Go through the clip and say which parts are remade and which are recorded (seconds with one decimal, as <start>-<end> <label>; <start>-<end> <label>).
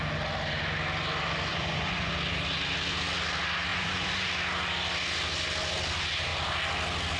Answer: 0.0-1.5 recorded; 1.5-2.1 remade; 2.1-3.7 recorded; 3.7-4.3 remade; 4.3-7.2 recorded